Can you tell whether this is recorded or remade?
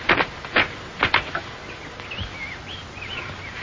recorded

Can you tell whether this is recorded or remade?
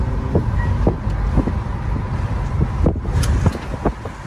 recorded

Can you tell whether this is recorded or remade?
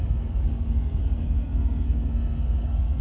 remade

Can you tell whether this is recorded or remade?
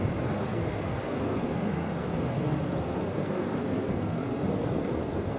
remade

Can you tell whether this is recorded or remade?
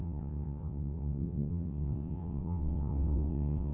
remade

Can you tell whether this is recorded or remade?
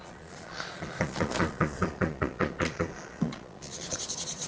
remade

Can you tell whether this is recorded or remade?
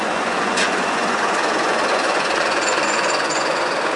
remade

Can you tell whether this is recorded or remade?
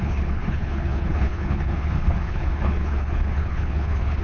remade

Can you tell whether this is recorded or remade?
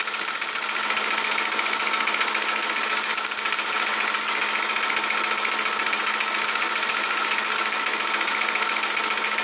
recorded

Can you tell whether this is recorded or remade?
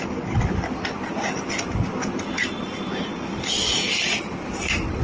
recorded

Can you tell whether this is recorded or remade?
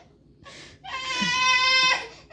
recorded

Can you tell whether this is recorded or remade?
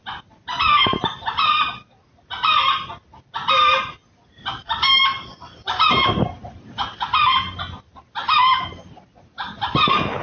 recorded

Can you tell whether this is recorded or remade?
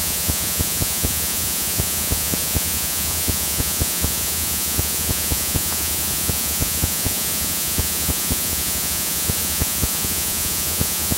remade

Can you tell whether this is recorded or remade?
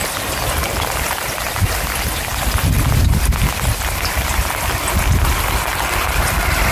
recorded